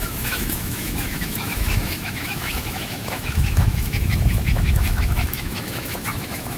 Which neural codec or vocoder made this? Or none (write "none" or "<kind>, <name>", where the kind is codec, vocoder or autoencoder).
autoencoder, DAC-VAE